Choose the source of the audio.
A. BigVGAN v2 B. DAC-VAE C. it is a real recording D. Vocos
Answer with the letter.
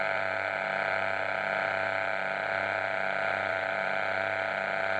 A